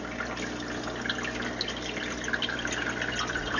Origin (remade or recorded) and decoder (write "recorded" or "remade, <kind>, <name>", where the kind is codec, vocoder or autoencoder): recorded